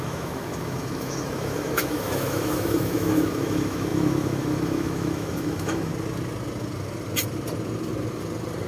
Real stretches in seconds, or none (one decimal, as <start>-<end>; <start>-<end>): 5.9-8.7